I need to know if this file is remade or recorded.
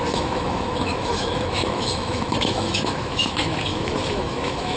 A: remade